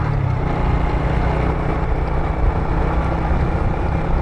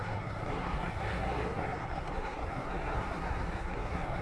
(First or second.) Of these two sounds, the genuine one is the first